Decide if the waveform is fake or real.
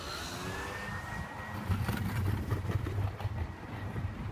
real